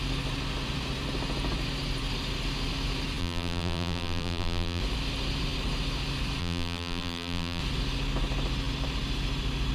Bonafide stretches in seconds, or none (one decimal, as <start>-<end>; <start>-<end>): 0.0-3.2; 4.8-6.4; 7.6-9.7